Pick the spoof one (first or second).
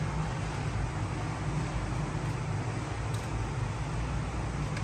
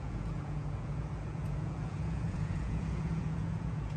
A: second